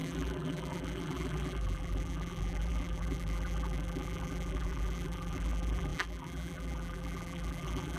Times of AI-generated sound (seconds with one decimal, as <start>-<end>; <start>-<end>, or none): 0.0-8.0